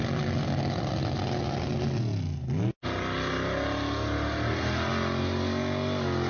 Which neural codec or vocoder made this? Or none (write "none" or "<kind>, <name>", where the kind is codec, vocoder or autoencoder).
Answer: none